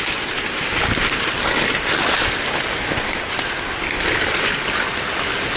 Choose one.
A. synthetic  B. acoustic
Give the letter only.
B